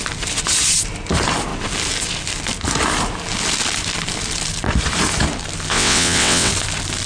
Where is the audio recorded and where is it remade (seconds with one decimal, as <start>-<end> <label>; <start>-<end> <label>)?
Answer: 0.0-5.7 recorded; 5.7-6.5 remade; 6.5-7.1 recorded